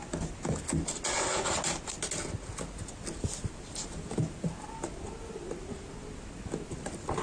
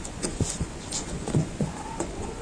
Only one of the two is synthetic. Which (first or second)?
second